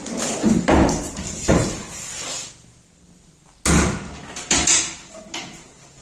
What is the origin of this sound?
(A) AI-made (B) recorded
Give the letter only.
B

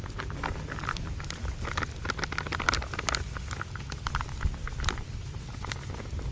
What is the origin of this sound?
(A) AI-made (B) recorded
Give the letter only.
B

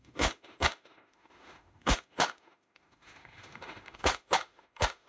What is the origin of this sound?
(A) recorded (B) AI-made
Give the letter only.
B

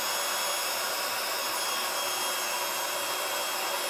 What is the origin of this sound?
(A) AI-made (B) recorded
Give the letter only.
B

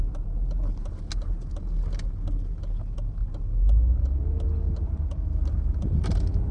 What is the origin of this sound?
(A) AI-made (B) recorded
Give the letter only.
B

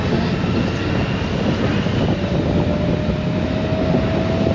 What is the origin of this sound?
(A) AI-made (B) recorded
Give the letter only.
B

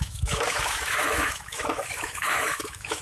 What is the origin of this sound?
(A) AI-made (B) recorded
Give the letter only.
A